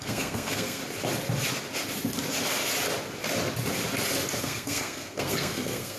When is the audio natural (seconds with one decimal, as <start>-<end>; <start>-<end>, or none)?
0.8-4.4